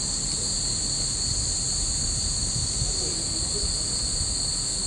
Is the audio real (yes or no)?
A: yes